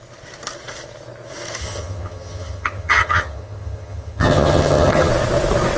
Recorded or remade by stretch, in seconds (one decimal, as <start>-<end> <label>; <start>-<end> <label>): 0.0-1.6 recorded; 1.6-5.1 remade; 5.1-5.8 recorded